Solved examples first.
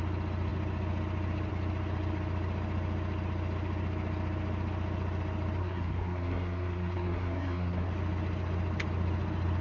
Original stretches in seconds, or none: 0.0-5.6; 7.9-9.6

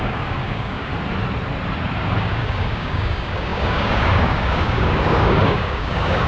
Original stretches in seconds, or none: 0.9-2.2

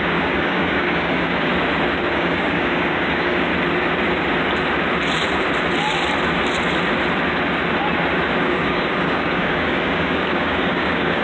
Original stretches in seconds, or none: 1.5-2.1; 3.5-8.4

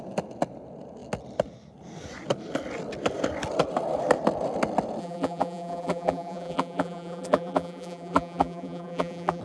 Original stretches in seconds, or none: 0.0-5.0

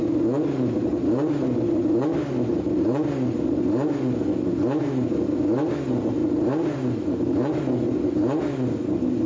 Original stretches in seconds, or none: 0.0-9.3